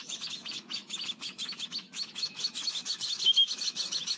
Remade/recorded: remade